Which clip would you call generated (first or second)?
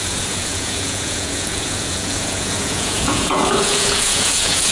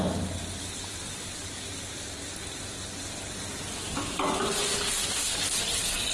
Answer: first